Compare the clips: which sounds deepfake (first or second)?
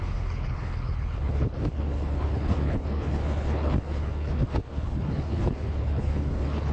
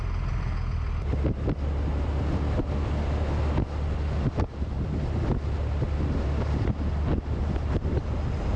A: first